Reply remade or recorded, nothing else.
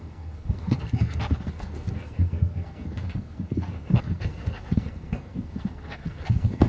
remade